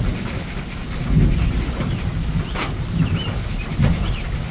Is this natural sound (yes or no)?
yes